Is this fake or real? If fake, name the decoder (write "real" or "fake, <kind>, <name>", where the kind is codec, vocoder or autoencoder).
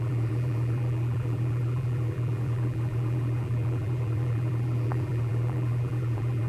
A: fake, vocoder, BigVGAN v2